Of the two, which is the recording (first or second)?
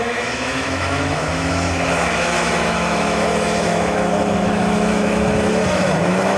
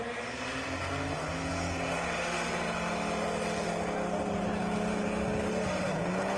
second